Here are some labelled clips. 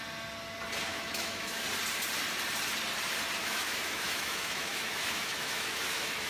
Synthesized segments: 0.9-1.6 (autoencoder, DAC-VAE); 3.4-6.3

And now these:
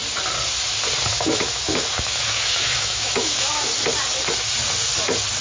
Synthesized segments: 1.1-3.6 (autoencoder, DAC-VAE)

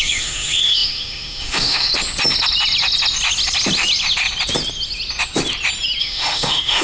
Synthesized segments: 0.0-1.9 (autoencoder, DAC-VAE); 6.0-6.8

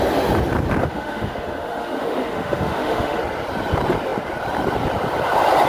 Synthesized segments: 0.8-3.2 (autoencoder, DAC-VAE)

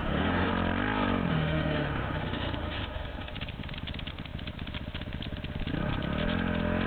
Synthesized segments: 0.0-0.5 (autoencoder, DAC-VAE); 1.3-3.3

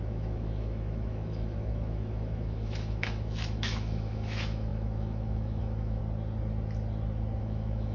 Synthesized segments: 0.0-6.0 (autoencoder, DAC-VAE); 7.4-7.9

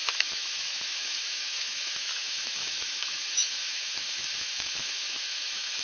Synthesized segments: 0.0-5.8 (autoencoder, DAC-VAE)